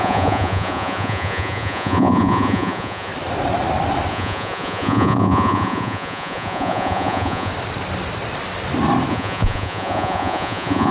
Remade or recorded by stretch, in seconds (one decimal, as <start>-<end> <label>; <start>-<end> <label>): 0.0-3.1 remade; 3.1-4.1 recorded; 4.1-7.5 remade; 7.5-9.1 recorded; 9.1-10.9 remade